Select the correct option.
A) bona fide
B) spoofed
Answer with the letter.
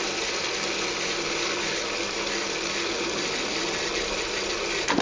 A